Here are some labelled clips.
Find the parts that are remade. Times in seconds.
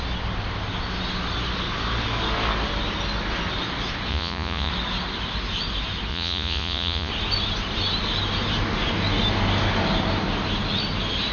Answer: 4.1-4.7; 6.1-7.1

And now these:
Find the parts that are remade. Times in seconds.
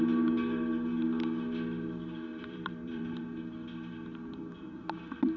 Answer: 2.3-3.2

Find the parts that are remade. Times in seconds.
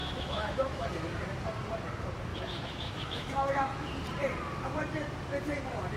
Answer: 0.0-0.9; 2.3-3.9